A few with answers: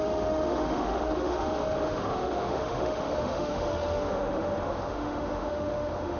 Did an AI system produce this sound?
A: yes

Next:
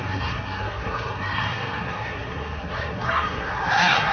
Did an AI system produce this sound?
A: yes